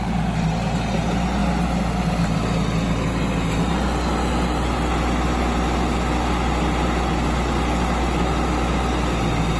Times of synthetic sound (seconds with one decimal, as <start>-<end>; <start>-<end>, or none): none